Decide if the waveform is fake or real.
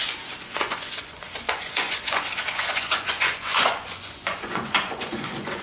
fake